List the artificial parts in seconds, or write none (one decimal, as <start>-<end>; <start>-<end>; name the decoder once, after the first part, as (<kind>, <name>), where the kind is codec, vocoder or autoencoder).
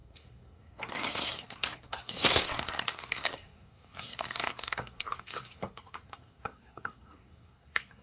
0.0-8.0 (codec, SNAC)